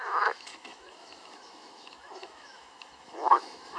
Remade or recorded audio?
remade